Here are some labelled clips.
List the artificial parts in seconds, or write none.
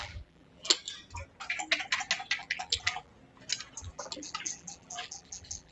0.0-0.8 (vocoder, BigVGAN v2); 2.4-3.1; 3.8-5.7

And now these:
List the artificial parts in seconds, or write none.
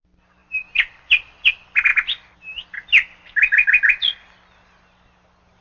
none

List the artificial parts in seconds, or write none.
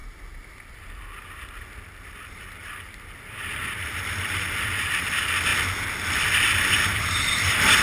2.1-5.5 (vocoder, BigVGAN v2); 6.5-7.8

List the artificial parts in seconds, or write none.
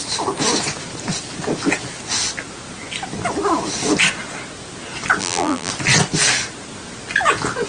5.2-5.7 (vocoder, BigVGAN v2)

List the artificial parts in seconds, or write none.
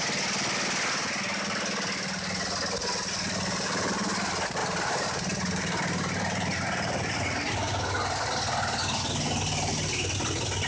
4.6-7.7 (vocoder, BigVGAN v2)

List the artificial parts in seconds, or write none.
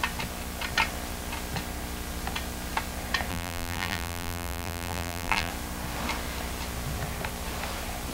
3.3-5.5 (vocoder, BigVGAN v2)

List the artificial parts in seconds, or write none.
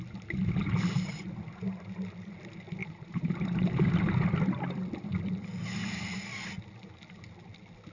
2.8-4.1 (vocoder, BigVGAN v2)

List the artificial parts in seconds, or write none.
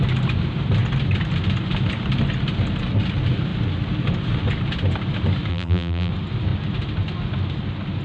5.5-6.1 (vocoder, BigVGAN v2)